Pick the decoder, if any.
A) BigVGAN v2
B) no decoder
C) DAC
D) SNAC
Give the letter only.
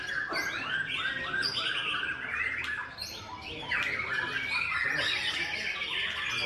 B